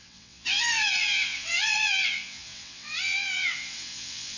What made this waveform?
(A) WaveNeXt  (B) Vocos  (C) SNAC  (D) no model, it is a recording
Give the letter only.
A